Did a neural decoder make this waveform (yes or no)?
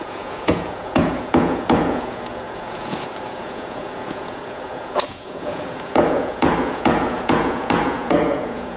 yes